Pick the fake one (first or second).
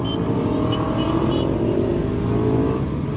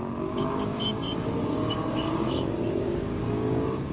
second